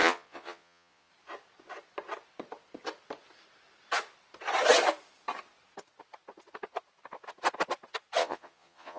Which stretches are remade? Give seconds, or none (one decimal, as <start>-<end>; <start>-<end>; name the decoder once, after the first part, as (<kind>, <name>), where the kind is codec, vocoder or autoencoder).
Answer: 0.0-1.1 (vocoder, Vocos); 8.2-9.0